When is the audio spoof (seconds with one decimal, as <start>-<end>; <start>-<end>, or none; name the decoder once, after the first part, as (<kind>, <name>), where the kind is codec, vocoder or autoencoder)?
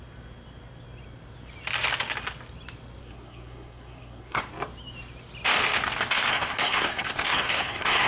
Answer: 3.0-4.4 (codec, SNAC); 6.3-8.1